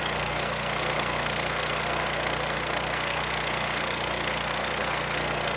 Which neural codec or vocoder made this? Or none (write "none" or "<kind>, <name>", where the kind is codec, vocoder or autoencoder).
codec, SNAC